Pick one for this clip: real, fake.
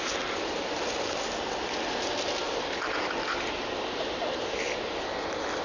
real